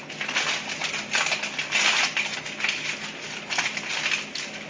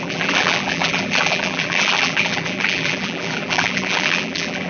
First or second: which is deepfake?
second